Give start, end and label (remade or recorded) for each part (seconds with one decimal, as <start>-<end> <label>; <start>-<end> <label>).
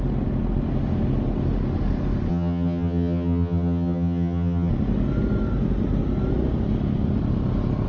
0.0-2.3 recorded; 2.3-4.7 remade; 4.7-7.9 recorded